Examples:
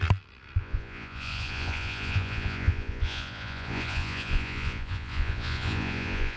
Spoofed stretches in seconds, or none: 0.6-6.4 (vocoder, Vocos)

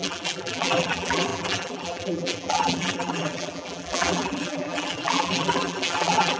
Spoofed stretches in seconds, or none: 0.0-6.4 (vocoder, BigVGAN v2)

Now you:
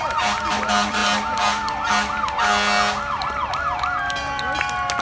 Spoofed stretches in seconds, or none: none

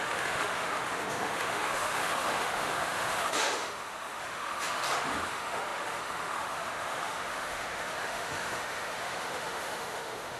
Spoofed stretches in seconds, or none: 0.0-4.8 (autoencoder, DAC-VAE); 5.3-10.4

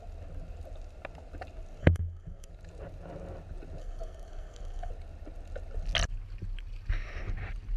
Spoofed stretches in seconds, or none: 1.8-2.5 (codec, SNAC); 3.8-4.9